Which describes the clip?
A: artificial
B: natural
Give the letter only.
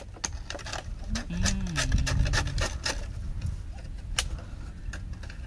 B